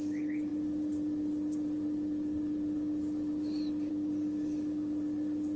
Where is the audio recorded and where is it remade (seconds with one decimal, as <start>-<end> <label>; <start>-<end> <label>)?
0.0-5.6 recorded